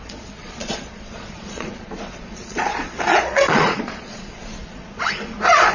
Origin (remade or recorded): remade